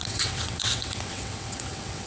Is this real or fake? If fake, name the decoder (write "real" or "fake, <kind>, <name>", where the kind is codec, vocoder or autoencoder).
fake, vocoder, WaveNeXt